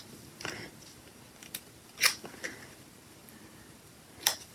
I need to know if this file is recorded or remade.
remade